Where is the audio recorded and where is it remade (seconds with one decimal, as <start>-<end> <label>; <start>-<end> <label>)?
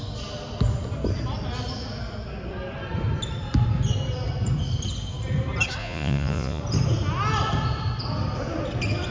0.0-5.8 recorded; 5.8-6.6 remade; 6.6-9.1 recorded